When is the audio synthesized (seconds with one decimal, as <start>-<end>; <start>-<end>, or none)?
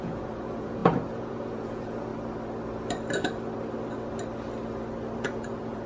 0.0-2.1; 5.2-5.9